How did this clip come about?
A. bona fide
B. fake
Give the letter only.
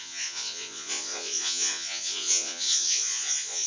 B